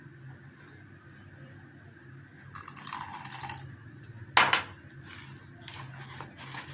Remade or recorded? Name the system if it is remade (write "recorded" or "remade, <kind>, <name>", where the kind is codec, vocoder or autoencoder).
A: recorded